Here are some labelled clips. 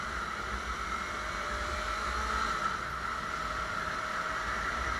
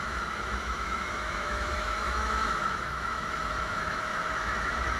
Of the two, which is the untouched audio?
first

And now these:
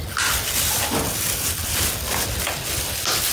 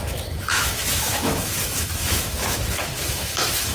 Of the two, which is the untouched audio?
first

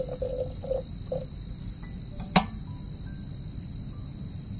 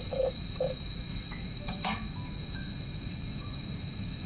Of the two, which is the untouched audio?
first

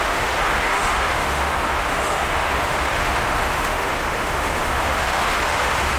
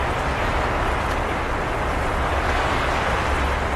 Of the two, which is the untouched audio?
second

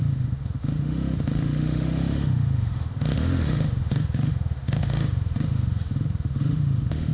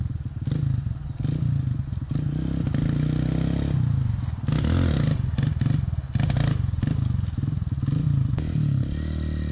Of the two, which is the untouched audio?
second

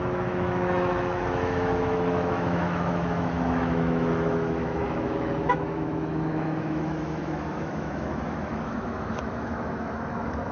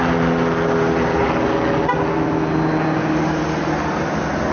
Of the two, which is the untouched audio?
second